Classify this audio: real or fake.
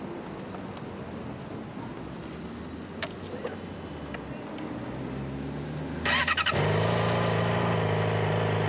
real